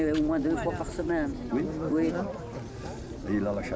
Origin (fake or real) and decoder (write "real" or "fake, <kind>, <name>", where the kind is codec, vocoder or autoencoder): real